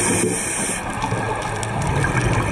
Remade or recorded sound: recorded